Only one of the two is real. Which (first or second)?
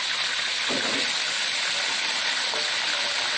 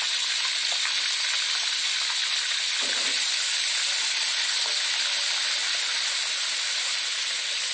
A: second